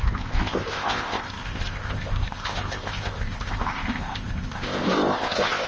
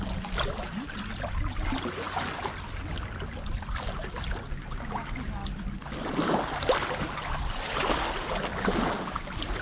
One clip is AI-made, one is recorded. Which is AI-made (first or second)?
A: first